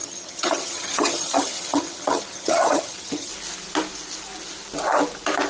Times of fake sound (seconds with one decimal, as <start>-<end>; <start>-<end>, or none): 0.0-3.3